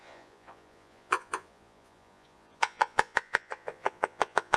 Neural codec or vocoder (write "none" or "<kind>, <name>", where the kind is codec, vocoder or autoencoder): vocoder, Vocos